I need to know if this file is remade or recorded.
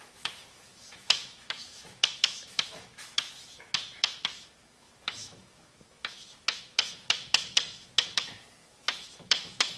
remade